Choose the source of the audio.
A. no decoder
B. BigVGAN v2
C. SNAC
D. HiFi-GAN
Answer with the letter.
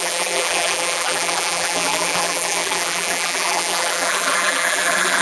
B